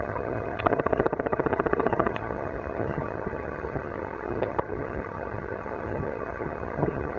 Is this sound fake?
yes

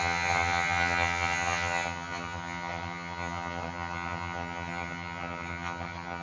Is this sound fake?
yes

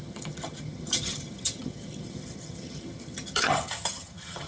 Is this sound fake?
yes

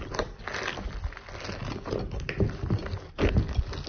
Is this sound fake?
no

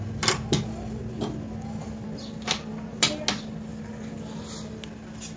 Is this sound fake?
no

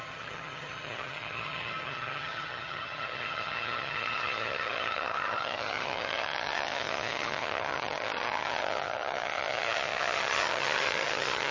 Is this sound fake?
yes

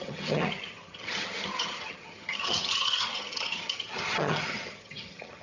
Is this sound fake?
yes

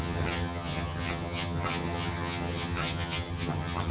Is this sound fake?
yes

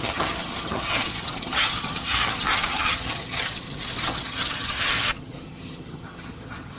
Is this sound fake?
yes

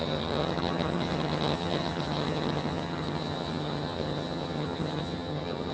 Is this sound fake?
yes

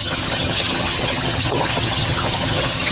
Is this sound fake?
yes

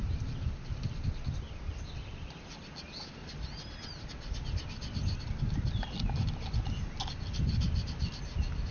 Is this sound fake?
no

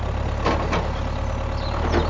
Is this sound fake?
no